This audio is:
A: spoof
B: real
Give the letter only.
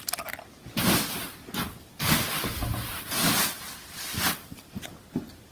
B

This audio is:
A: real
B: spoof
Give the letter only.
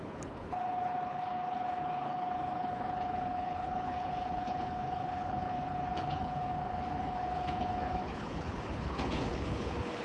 B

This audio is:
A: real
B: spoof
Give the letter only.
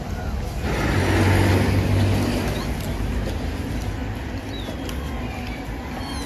A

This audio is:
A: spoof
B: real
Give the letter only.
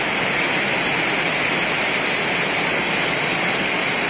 B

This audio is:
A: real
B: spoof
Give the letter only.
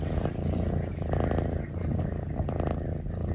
A